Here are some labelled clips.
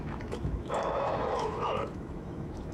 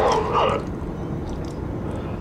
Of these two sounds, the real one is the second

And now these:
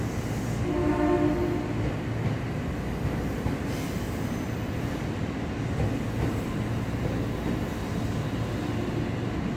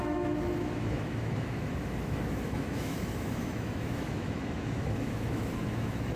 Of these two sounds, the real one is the first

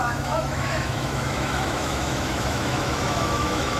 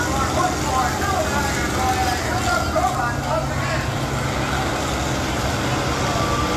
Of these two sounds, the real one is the second